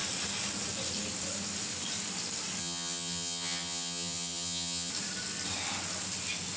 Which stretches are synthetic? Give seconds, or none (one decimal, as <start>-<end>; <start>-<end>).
2.6-4.9

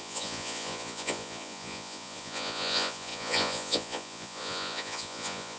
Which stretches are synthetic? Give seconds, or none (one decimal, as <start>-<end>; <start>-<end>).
0.0-5.6

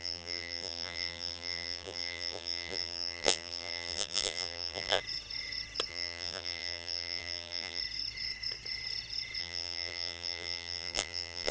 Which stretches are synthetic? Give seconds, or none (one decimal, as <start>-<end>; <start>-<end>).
0.0-5.0; 5.9-7.8; 9.4-11.5

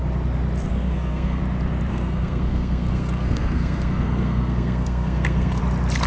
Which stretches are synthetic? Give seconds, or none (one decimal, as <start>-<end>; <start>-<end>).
0.7-1.4; 1.9-5.6

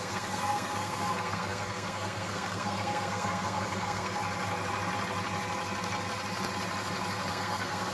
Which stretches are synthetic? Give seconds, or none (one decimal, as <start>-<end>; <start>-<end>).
0.0-4.2; 7.3-7.9

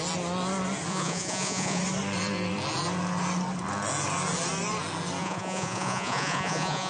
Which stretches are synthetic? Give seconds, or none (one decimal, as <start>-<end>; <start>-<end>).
0.9-1.8; 5.2-6.9